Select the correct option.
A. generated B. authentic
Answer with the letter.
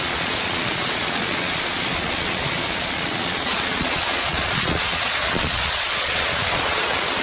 A